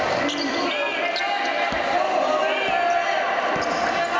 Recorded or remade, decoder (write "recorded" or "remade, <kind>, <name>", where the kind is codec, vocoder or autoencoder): recorded